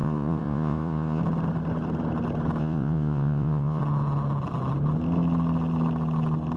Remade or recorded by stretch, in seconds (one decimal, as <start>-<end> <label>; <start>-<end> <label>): 0.0-1.2 remade; 1.2-2.6 recorded; 2.6-3.8 remade; 3.8-6.6 recorded